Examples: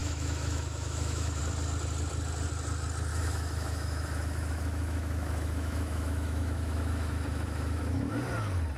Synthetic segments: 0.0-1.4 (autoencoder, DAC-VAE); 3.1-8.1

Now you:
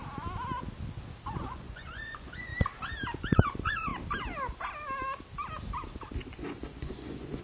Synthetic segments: 1.3-2.5 (vocoder, Vocos); 3.2-3.9; 6.3-7.4

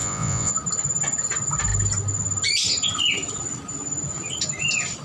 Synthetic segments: 0.0-0.5 (vocoder, Vocos)

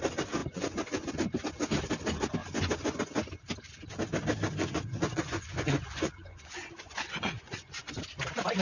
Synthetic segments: 0.4-1.1 (vocoder, Vocos); 2.4-3.0; 4.6-8.0

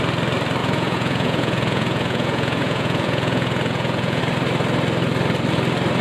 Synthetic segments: 0.6-4.2 (vocoder, Vocos)